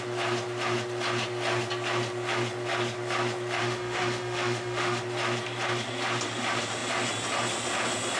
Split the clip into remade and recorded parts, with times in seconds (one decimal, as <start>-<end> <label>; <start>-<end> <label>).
0.0-3.6 recorded; 3.6-5.0 remade; 5.0-8.2 recorded